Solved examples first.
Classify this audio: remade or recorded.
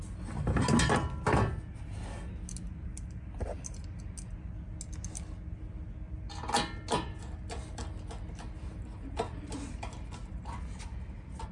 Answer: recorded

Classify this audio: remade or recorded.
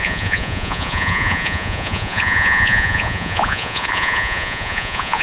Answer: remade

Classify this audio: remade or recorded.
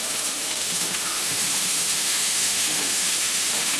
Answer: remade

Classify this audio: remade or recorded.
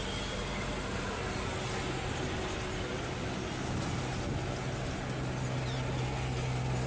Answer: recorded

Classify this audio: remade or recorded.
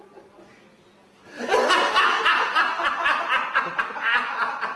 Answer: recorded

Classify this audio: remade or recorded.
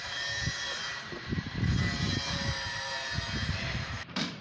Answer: remade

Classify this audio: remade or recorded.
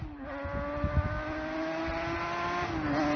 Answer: recorded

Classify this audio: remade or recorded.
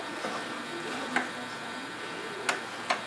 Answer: recorded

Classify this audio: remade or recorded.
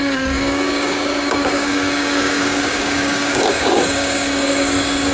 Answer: remade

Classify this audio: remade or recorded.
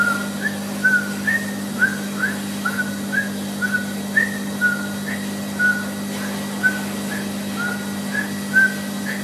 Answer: recorded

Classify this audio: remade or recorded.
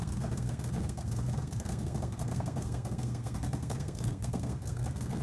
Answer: remade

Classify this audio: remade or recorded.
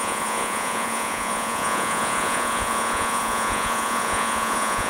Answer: remade